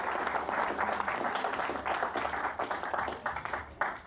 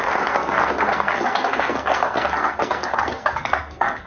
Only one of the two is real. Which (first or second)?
first